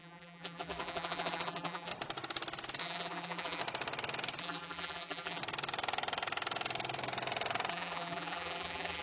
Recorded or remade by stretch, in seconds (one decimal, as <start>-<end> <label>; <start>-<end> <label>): 0.0-1.9 remade; 1.9-2.8 recorded; 2.8-3.6 remade; 3.6-4.4 recorded; 4.4-5.4 remade; 5.4-7.7 recorded; 7.7-9.0 remade